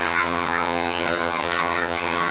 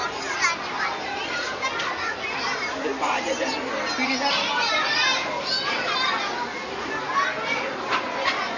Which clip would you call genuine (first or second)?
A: second